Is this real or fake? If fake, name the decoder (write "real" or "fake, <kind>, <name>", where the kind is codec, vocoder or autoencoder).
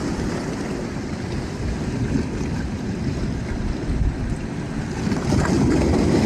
real